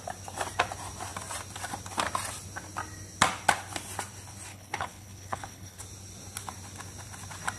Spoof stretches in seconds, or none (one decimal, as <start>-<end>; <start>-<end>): 4.5-5.8